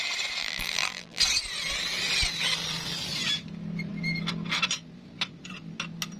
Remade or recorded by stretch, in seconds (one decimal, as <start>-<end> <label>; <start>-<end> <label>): 0.0-0.4 recorded; 0.4-1.2 remade; 1.2-6.2 recorded